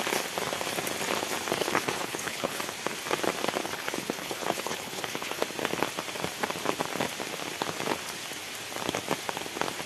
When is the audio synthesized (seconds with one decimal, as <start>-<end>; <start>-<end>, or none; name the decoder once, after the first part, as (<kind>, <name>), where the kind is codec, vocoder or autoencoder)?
1.6-2.6 (codec, HILCodec); 3.6-5.4